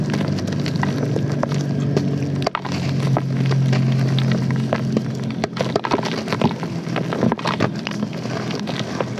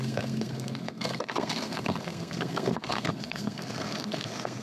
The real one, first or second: first